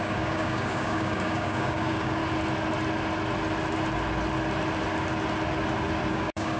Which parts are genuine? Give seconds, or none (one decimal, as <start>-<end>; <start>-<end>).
2.2-6.1